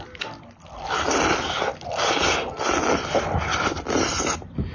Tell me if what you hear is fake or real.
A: real